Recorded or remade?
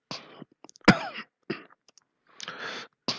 recorded